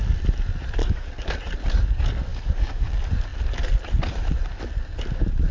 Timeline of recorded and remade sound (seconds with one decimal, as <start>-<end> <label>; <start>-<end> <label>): 0.0-0.8 recorded; 0.8-1.4 remade; 1.4-2.3 recorded; 2.3-2.9 remade; 2.9-5.5 recorded